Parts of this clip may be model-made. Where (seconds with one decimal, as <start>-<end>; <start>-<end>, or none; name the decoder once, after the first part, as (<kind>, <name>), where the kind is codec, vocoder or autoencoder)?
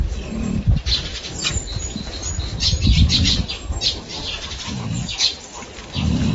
1.1-3.5 (vocoder, BigVGAN v2); 4.1-6.3